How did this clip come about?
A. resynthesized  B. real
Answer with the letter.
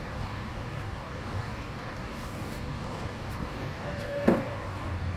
A